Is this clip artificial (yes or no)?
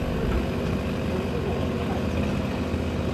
no